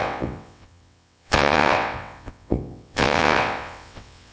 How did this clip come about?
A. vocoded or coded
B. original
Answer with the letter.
A